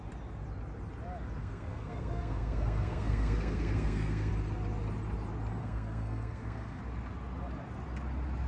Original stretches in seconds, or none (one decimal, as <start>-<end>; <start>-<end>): 0.0-1.4; 4.3-5.6; 6.8-8.5